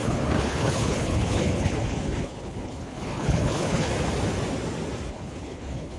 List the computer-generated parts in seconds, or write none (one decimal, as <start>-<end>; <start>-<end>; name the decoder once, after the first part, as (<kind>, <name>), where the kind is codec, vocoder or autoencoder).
0.0-3.9 (codec, HILCodec); 5.1-6.0